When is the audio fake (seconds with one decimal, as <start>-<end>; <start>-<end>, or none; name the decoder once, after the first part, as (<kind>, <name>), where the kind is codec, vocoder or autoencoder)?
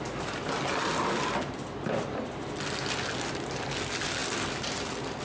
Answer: none